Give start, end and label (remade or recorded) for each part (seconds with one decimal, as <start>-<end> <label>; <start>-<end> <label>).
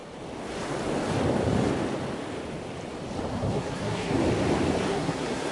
0.0-3.3 recorded; 3.3-4.2 remade; 4.2-4.9 recorded; 4.9-5.5 remade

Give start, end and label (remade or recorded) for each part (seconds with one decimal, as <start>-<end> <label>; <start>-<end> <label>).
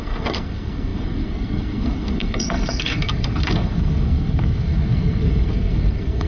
0.0-6.3 remade